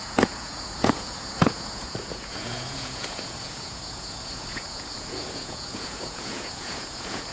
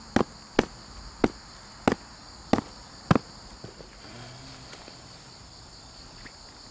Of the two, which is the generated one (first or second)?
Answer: first